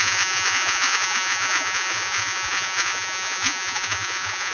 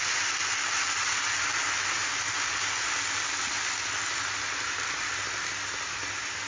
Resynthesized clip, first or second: first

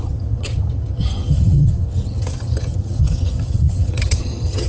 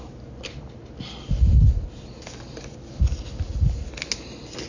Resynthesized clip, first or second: first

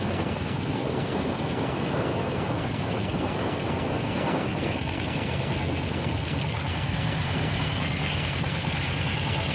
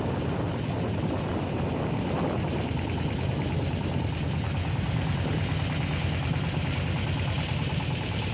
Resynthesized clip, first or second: first